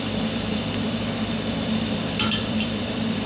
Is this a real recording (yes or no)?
no